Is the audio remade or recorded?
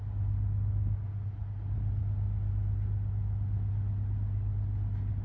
recorded